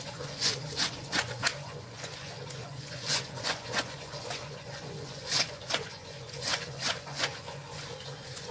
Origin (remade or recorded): remade